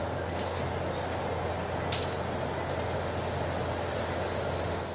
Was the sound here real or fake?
real